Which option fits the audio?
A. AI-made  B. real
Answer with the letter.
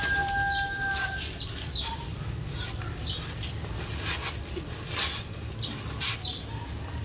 B